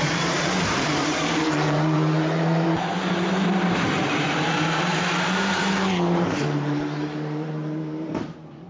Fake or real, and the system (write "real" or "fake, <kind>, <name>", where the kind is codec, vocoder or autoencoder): fake, vocoder, BigVGAN v2